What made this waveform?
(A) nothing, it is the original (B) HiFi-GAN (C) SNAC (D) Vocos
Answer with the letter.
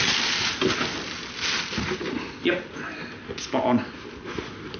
A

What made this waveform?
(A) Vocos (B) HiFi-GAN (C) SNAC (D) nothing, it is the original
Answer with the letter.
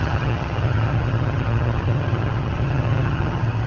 B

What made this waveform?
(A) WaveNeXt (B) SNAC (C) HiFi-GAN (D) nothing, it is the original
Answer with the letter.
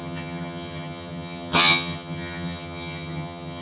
C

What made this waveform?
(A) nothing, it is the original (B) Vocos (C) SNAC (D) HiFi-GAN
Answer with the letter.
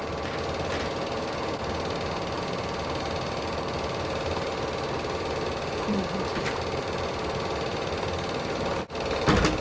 A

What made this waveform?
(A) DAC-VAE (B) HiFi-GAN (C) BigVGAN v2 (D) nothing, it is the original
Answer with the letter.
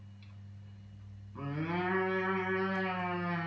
D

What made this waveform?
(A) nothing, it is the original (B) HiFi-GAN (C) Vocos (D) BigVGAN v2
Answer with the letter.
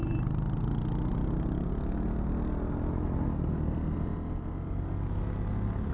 A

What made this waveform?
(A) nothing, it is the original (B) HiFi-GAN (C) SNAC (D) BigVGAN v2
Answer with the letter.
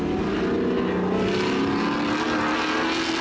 A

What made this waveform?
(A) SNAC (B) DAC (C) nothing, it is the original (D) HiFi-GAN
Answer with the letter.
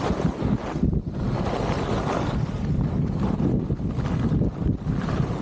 C